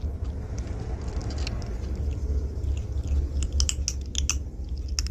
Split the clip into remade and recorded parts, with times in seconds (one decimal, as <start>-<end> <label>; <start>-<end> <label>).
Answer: 0.0-5.1 recorded